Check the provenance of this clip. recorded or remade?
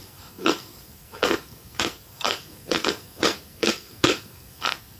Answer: remade